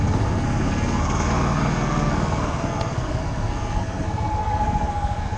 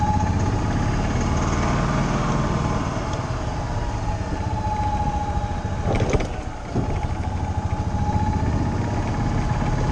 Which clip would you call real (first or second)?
second